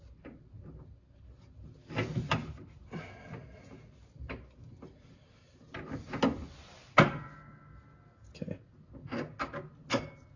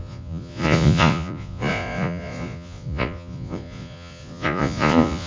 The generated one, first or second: second